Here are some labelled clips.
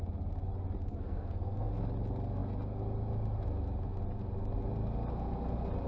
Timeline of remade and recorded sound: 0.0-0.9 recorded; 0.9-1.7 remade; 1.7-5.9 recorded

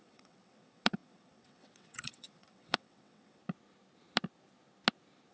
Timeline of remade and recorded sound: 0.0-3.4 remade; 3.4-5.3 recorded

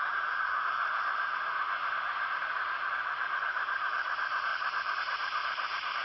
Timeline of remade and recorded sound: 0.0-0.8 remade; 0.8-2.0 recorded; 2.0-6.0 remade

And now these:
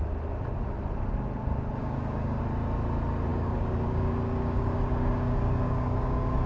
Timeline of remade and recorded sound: 0.0-1.8 recorded; 1.8-2.4 remade; 2.4-3.3 recorded; 3.3-6.5 remade

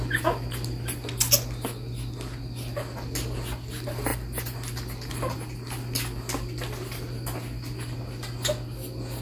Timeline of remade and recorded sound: 0.0-9.2 recorded

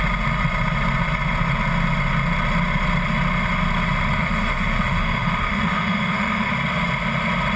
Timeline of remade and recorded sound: 0.0-4.2 recorded; 4.2-6.5 remade; 6.5-7.6 recorded

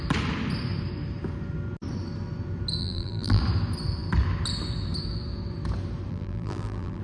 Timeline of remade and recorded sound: 0.0-2.8 recorded; 2.8-3.4 remade; 3.4-6.1 recorded; 6.1-7.0 remade